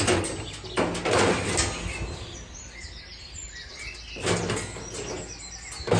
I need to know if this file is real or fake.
real